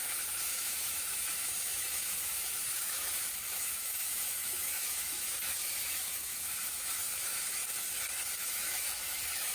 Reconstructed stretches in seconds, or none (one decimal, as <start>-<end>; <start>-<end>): 0.0-7.6; 8.4-9.5